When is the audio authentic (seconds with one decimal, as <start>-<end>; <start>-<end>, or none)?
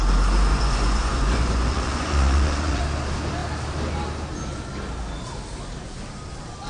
0.0-0.5; 2.8-6.7